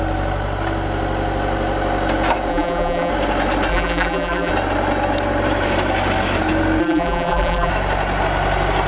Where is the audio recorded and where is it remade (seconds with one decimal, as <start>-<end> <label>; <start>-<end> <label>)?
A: 0.0-2.5 recorded; 2.5-3.1 remade; 3.1-3.7 recorded; 3.7-4.5 remade; 4.5-6.8 recorded; 6.8-7.7 remade; 7.7-8.9 recorded